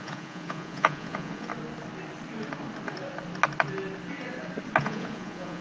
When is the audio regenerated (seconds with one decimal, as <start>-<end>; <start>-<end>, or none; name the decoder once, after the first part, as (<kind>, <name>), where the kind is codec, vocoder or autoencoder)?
0.0-1.5 (vocoder, Vocos); 4.8-5.6